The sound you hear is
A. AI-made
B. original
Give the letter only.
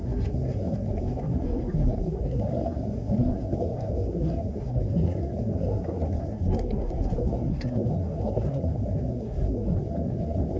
A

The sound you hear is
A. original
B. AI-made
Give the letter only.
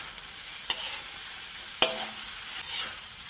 A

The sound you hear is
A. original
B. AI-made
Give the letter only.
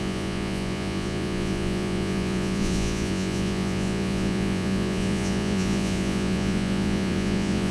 B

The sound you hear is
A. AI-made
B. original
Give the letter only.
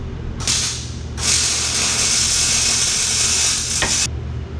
B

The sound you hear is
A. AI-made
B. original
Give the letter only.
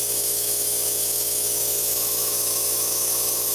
A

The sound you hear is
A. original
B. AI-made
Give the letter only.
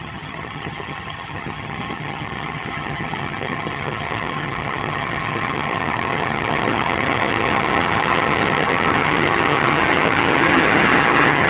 B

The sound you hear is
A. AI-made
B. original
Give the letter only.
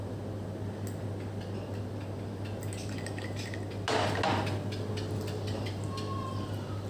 B